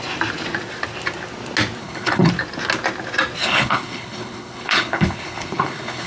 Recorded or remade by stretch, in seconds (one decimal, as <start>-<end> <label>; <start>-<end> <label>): 0.0-1.8 recorded; 1.8-2.3 remade; 2.3-3.4 recorded; 3.4-6.1 remade